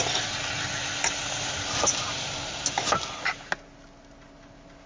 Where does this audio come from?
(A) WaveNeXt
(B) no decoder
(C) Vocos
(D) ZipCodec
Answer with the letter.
B